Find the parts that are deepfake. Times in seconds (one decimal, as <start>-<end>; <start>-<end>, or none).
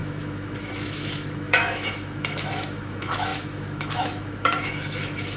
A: 0.0-5.4